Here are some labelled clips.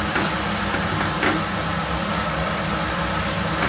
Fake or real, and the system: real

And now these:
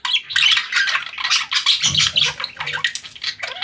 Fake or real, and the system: real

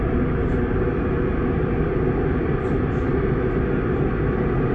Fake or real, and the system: real